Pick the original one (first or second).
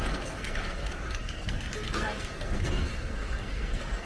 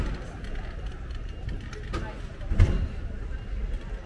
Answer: second